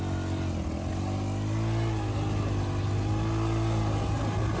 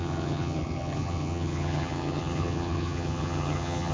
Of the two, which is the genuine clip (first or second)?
first